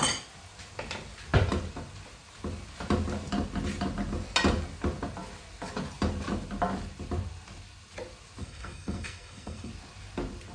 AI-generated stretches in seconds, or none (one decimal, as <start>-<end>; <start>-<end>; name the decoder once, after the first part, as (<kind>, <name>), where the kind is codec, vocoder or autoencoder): 8.4-9.7 (codec, SNAC)